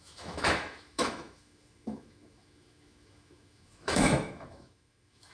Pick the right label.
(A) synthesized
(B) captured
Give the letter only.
A